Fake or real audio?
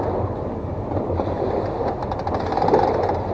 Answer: real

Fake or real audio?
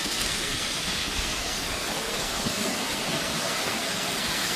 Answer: fake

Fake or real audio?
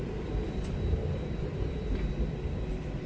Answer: real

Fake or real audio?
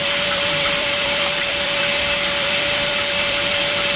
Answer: fake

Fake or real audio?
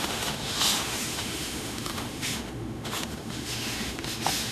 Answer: fake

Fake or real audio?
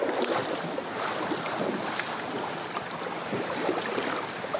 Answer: real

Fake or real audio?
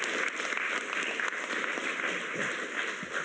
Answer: real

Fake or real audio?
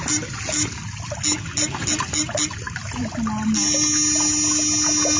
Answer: real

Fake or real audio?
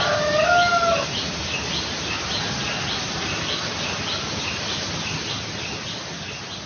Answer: real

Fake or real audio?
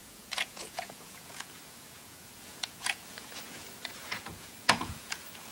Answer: fake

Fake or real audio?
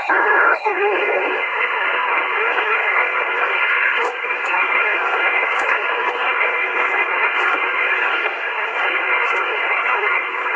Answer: fake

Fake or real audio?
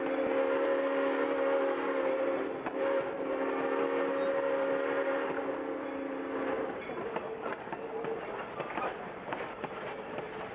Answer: real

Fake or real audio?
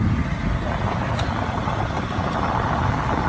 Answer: real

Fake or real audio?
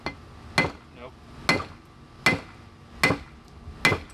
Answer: real